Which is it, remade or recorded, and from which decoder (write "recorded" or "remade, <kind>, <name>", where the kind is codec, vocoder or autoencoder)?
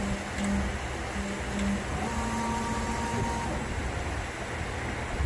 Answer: recorded